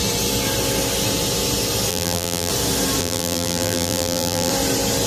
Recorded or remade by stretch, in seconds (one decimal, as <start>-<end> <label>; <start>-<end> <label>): 0.0-1.9 recorded; 1.9-2.5 remade; 2.5-3.0 recorded; 3.0-4.5 remade; 4.5-5.1 recorded